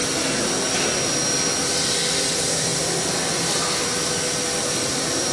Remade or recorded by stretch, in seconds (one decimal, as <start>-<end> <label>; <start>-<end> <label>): 0.0-5.3 recorded